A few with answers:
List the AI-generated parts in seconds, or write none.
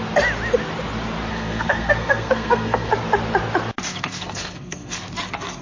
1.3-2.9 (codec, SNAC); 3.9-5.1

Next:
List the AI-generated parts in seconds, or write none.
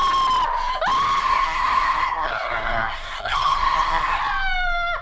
1.2-4.2 (codec, SNAC)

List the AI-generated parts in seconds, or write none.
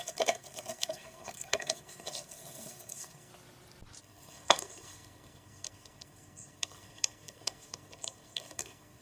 0.0-3.3 (codec, SNAC); 4.0-9.0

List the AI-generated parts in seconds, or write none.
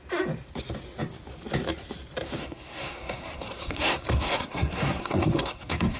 2.4-6.0 (codec, SNAC)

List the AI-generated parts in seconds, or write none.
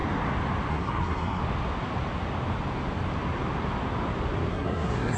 0.7-1.4 (codec, SNAC); 4.5-5.2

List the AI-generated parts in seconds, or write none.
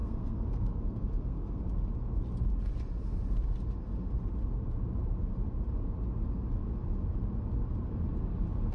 0.0-1.6 (codec, SNAC)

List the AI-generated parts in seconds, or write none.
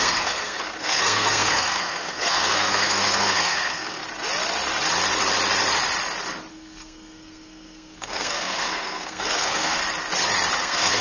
0.0-4.0 (codec, SNAC); 6.5-9.8; 10.6-11.0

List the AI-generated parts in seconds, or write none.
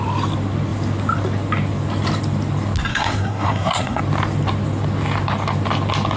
2.9-4.0 (codec, SNAC)